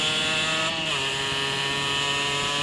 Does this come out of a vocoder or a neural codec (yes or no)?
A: no